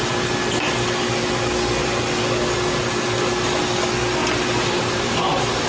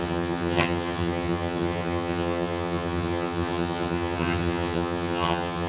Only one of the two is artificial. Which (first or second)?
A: second